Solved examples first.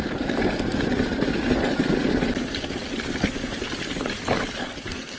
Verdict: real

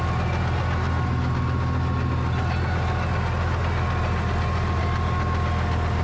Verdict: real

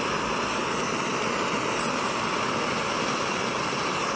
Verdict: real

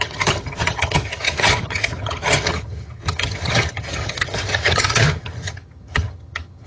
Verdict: fake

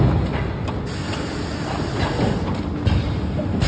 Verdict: real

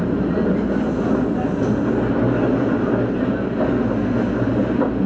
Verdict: real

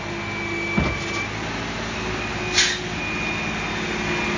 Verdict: real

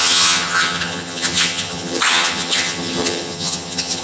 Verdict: fake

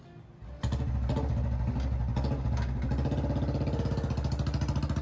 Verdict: real